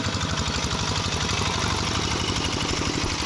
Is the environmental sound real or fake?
real